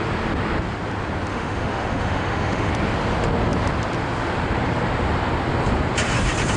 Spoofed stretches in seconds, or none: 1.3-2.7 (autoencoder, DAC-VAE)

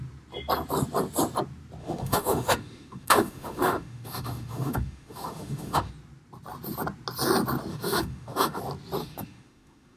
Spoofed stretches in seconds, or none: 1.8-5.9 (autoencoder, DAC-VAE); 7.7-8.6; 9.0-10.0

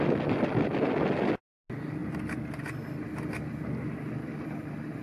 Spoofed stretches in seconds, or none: none

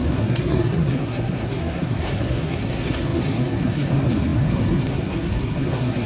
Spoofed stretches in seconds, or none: 0.0-6.1 (codec, SNAC)

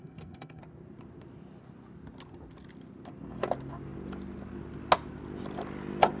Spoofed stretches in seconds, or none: 0.0-0.6 (codec, SNAC)